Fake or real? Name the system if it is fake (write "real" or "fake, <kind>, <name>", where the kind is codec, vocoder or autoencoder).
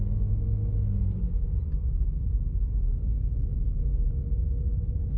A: real